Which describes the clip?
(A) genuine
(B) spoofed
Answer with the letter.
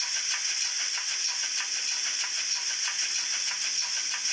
A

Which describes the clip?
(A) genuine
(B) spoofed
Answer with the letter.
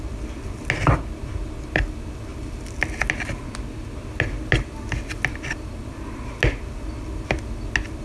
A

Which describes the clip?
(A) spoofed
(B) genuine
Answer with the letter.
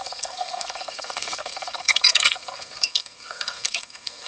A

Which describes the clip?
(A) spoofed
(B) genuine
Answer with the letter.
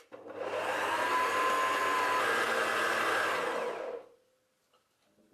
B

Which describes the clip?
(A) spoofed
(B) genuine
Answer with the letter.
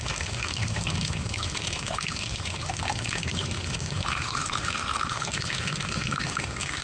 A